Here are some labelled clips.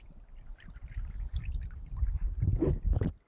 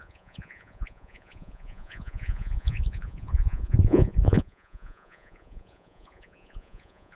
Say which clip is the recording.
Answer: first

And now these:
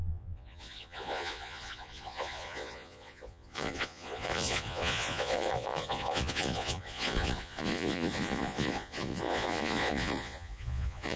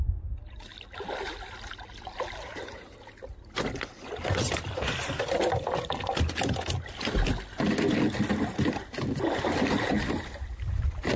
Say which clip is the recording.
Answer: second